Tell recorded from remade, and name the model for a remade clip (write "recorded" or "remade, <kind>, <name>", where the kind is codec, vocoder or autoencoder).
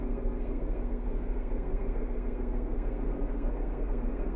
remade, codec, SNAC